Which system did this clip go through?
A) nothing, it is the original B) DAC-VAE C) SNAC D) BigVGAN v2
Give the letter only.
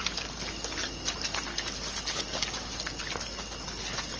A